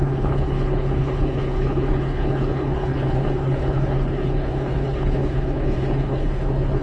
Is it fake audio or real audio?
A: fake